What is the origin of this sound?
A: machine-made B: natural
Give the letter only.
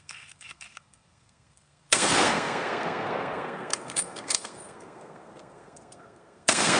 A